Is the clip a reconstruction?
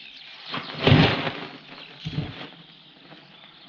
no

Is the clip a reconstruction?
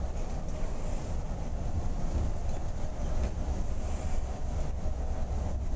no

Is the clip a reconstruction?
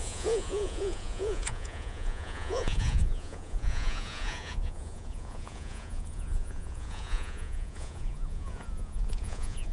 yes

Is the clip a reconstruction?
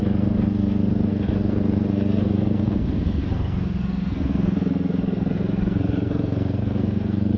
yes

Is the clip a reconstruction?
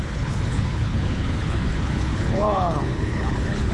yes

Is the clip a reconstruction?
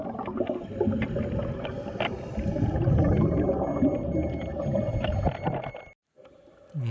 no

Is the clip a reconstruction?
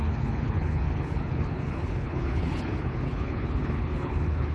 yes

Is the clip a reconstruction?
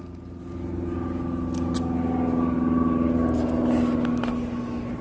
no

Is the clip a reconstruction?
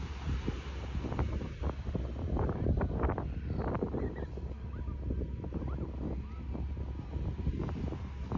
no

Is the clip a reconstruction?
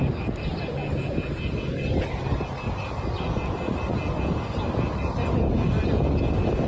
no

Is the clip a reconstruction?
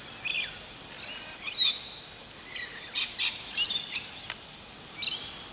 no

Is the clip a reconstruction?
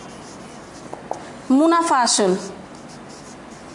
no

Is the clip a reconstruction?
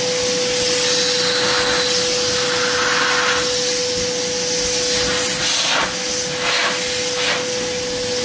no